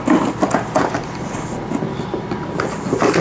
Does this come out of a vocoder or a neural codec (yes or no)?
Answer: no